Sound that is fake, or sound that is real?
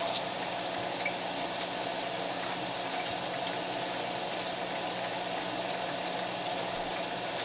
real